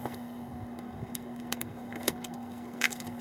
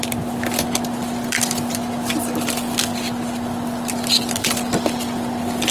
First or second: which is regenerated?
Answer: first